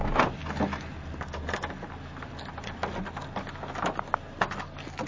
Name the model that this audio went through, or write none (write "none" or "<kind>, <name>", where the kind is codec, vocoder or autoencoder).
none